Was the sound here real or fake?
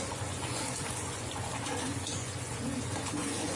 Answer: fake